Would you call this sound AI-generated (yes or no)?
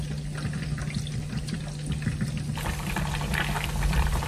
no